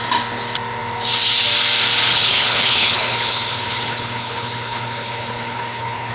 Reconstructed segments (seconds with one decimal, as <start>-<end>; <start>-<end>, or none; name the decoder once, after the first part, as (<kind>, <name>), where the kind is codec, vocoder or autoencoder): 2.1-6.1 (codec, HILCodec)